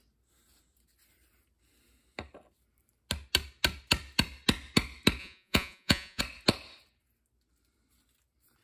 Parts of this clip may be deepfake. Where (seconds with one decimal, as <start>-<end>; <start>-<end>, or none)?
5.2-6.2